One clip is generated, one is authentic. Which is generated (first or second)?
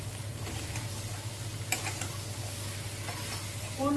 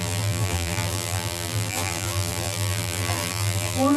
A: second